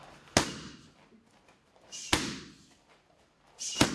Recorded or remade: recorded